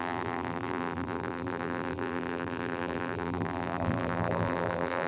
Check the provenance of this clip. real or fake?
fake